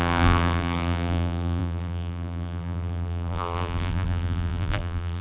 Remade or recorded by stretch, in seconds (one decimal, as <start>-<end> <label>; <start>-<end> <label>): 0.0-5.2 remade